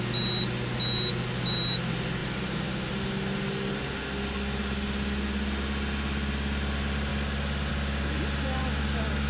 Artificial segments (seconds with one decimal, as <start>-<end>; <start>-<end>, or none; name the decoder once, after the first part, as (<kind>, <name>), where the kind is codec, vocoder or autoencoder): none

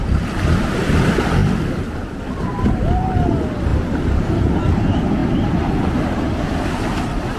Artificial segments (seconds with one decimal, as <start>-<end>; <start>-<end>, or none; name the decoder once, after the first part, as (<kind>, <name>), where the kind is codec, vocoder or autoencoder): none

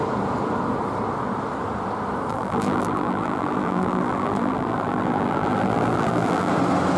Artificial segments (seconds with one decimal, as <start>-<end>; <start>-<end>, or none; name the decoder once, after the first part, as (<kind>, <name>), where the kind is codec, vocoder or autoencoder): 2.3-6.5 (vocoder, BigVGAN v2)

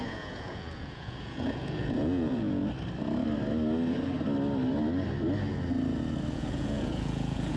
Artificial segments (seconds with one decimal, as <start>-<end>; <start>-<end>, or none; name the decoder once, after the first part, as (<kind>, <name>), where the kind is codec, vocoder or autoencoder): 0.0-2.6 (vocoder, Vocos); 6.3-7.6

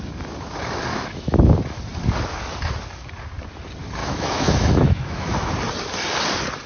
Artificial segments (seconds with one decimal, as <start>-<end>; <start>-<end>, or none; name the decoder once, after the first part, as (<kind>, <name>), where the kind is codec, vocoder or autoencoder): 0.9-1.5 (autoencoder, DAC-VAE); 4.0-5.5

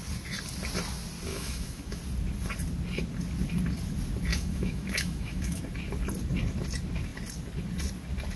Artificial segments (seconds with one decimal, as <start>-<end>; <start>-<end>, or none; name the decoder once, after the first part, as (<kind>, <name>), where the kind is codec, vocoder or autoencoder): 1.3-2.0 (autoencoder, DAC-VAE); 4.3-5.6

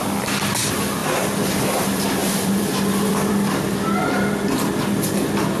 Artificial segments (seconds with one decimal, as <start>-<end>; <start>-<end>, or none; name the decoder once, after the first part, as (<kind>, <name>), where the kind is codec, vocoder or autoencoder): 2.2-3.3 (vocoder, BigVGAN v2)